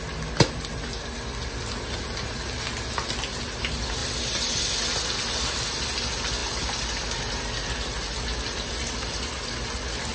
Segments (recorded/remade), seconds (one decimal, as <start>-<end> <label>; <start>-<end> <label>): 0.0-10.1 recorded